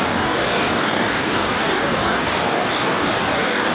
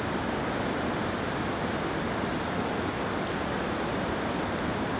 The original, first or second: second